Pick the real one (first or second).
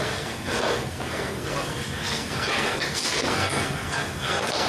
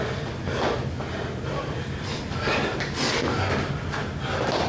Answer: second